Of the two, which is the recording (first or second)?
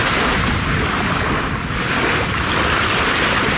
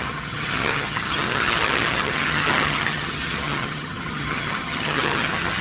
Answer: first